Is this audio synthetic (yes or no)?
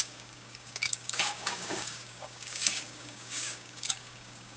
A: yes